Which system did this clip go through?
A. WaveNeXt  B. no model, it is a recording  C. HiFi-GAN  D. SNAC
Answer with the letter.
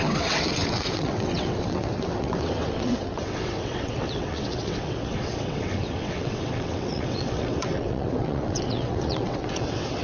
A